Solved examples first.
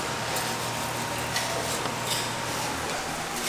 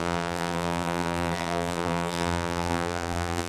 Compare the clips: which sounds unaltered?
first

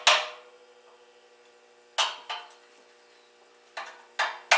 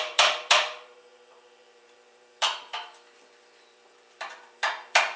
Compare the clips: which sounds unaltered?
first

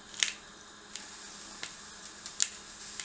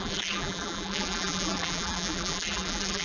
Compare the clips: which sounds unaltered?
first